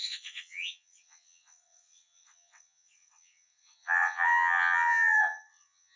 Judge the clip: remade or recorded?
remade